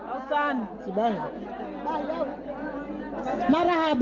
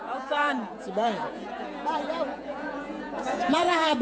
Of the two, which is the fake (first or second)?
second